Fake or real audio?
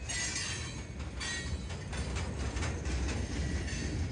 real